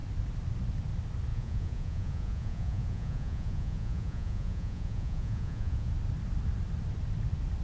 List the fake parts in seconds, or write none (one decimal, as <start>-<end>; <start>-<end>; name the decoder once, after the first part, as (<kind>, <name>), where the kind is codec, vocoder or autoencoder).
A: 1.3-5.9 (vocoder, Vocos)